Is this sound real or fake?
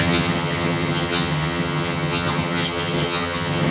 fake